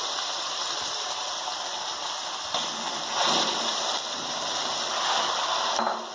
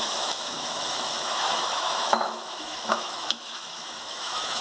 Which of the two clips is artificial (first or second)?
second